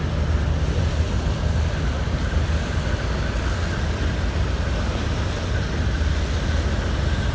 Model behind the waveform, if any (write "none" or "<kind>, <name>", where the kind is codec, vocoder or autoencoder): none